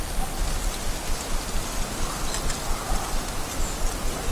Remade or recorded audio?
recorded